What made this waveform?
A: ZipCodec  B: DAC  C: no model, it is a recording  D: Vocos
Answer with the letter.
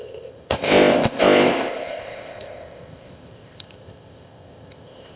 A